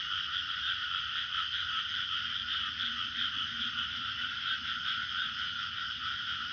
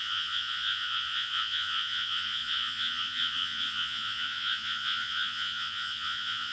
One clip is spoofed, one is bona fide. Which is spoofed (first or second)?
second